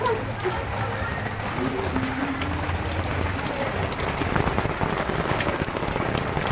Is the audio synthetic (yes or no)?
no